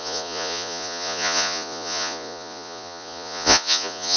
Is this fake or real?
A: fake